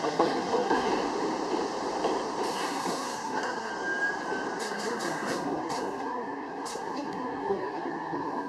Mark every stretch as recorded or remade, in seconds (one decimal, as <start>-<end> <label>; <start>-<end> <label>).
0.0-0.9 remade; 0.9-2.5 recorded; 2.5-3.7 remade; 3.7-4.6 recorded; 4.6-8.5 remade